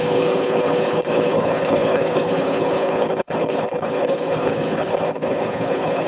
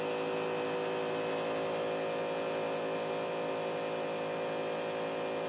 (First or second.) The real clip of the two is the second